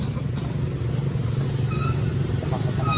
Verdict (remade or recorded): recorded